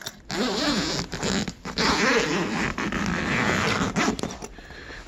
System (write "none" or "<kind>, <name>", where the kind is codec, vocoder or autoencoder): none